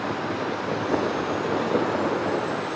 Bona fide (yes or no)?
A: yes